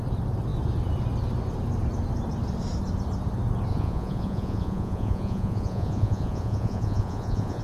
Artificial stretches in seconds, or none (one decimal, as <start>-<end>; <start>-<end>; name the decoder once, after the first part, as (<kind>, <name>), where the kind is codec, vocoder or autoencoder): 3.7-7.6 (vocoder, Vocos)